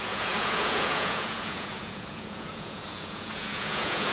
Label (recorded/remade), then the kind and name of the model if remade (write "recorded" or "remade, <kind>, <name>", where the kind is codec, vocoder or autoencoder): remade, vocoder, Vocos